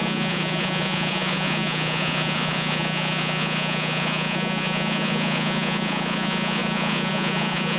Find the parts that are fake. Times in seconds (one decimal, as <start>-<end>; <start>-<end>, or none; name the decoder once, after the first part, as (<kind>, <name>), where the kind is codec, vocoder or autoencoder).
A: 0.0-7.8 (vocoder, Vocos)